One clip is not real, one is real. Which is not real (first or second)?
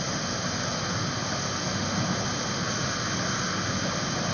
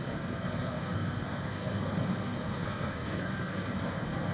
second